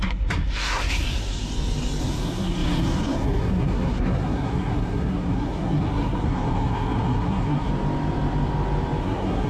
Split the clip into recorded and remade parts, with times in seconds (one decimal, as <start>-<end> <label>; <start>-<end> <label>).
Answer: 0.0-1.5 remade; 1.5-2.0 recorded; 2.0-7.7 remade; 7.7-9.0 recorded; 9.0-9.5 remade